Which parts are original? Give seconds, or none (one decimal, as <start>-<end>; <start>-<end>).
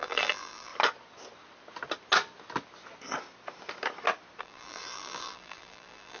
0.7-4.4